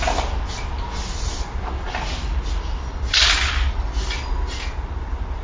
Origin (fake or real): real